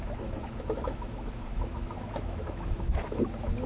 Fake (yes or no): yes